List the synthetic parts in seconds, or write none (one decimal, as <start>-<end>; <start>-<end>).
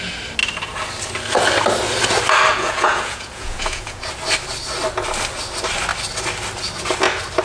2.5-4.0